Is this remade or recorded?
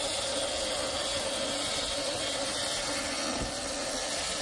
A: recorded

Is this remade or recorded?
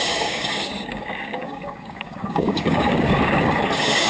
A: remade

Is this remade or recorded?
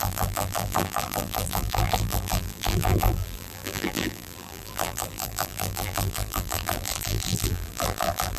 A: remade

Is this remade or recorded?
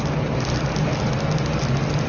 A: recorded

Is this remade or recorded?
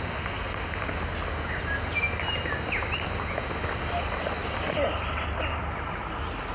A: recorded